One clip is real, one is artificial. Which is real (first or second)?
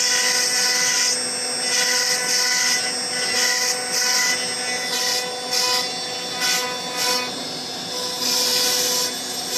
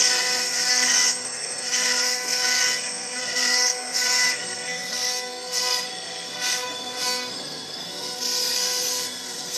first